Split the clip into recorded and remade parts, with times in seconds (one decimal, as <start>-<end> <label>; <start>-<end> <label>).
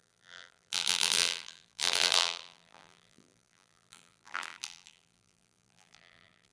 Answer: 0.0-6.5 remade